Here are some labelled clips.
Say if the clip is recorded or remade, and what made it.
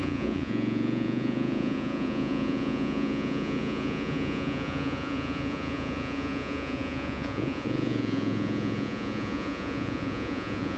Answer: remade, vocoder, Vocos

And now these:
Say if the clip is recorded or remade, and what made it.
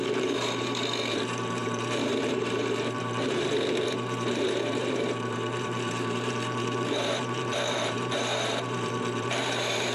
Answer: remade, vocoder, BigVGAN v2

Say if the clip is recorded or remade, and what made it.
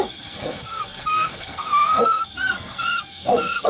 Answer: remade, codec, SNAC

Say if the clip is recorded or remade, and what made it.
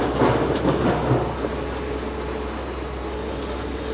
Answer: recorded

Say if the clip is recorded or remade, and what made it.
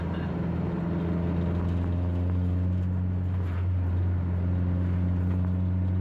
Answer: recorded